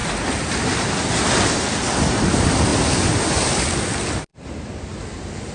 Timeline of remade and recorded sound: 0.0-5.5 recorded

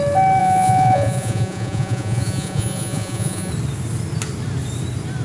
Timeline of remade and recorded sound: 0.0-0.4 recorded; 0.4-3.5 remade; 3.5-5.2 recorded